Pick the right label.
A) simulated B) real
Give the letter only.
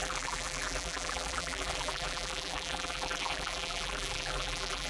A